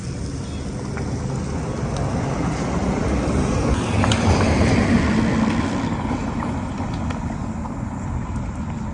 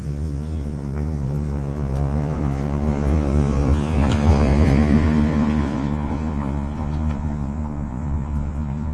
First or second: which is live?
first